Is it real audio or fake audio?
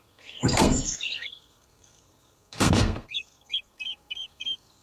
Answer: fake